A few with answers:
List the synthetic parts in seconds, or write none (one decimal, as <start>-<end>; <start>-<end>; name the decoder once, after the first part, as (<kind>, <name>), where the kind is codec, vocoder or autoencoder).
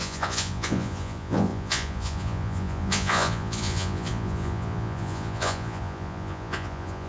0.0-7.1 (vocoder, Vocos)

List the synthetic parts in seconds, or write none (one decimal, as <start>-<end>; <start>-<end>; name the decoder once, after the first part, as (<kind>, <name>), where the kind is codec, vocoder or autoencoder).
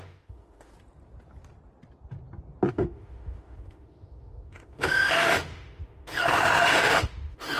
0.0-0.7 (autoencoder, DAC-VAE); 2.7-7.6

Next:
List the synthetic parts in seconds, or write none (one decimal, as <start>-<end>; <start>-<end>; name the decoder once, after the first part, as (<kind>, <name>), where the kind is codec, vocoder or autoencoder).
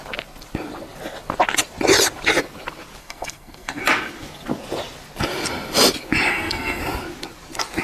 3.0-3.8 (codec, SNAC); 6.3-6.8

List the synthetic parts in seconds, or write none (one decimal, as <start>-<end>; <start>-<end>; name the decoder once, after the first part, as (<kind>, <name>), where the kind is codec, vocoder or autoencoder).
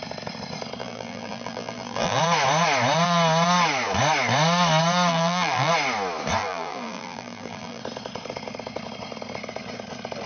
0.8-2.2 (vocoder, BigVGAN v2); 5.1-5.7; 6.4-7.8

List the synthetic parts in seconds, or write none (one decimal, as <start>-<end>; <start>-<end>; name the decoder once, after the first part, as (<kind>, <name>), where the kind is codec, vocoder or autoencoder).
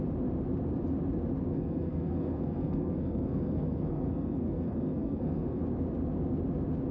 1.5-5.6 (codec, SNAC)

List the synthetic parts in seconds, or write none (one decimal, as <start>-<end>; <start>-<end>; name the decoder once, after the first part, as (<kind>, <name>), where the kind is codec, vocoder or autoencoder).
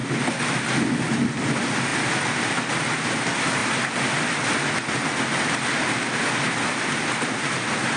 none